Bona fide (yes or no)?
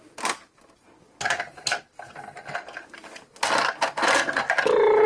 yes